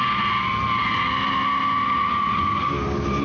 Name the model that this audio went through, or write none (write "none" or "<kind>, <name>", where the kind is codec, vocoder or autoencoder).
none